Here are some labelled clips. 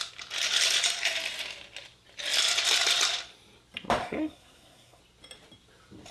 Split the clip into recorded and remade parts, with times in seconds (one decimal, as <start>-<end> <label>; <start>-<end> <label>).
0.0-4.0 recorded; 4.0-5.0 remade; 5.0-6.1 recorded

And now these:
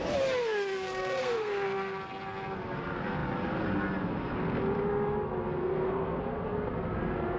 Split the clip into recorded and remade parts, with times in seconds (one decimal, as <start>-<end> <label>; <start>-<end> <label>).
0.0-0.4 recorded; 0.4-2.0 remade; 2.0-5.6 recorded; 5.6-6.2 remade; 6.2-7.4 recorded

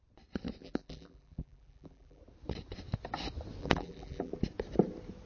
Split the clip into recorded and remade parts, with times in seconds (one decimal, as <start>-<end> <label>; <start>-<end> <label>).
0.0-0.6 recorded; 0.6-2.2 remade; 2.2-3.6 recorded; 3.6-4.3 remade; 4.3-5.3 recorded

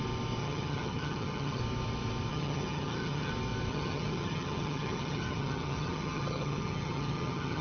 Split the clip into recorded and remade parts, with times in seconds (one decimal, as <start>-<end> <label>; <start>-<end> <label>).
0.0-0.4 recorded; 0.4-1.6 remade; 1.6-2.3 recorded; 2.3-3.3 remade; 3.3-3.7 recorded; 3.7-7.6 remade

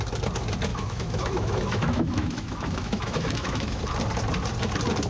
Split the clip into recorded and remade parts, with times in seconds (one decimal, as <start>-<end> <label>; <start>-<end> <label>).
0.0-0.7 recorded; 0.7-3.8 remade; 3.8-5.1 recorded

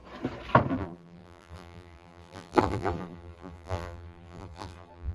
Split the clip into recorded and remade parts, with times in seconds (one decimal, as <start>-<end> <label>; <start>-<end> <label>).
0.0-0.7 recorded; 0.7-5.1 remade

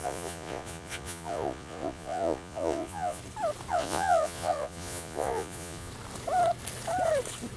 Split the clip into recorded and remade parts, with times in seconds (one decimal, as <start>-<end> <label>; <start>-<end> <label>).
0.0-3.2 remade; 3.2-3.7 recorded; 3.7-5.9 remade; 5.9-7.6 recorded